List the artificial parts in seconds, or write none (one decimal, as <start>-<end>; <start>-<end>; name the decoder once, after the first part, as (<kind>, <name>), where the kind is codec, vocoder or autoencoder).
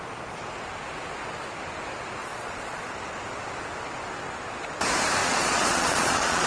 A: 2.2-2.9 (vocoder, Vocos); 5.2-6.5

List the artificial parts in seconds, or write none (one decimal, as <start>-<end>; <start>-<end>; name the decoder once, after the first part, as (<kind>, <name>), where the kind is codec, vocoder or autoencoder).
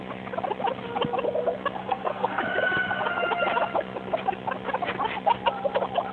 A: 1.8-2.4 (codec, SNAC)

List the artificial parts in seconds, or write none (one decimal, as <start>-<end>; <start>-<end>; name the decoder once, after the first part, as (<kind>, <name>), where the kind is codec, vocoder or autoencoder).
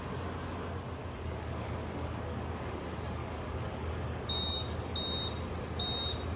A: 1.0-2.8 (codec, DAC); 3.2-4.8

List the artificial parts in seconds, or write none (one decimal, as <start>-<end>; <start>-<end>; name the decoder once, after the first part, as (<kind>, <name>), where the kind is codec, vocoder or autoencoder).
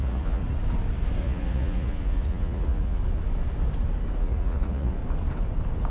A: 0.0-0.4 (vocoder, Vocos); 1.2-3.0; 4.2-5.0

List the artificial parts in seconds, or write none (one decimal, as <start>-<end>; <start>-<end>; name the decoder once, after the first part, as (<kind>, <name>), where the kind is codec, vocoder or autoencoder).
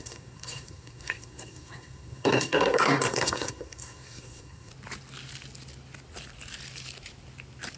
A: 0.0-4.7 (codec, SNAC)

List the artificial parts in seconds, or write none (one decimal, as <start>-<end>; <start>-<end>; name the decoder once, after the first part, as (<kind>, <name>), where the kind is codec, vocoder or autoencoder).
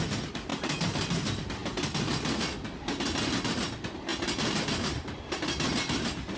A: none